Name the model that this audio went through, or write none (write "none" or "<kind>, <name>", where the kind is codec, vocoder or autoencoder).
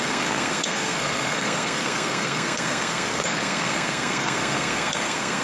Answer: codec, SNAC